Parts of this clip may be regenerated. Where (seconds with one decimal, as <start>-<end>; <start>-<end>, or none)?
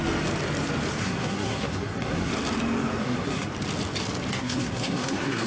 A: 1.0-2.3; 3.0-3.5; 4.4-5.5